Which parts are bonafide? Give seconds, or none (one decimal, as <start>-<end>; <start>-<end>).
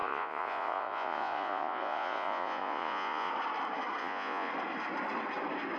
3.3-4.0; 4.5-5.8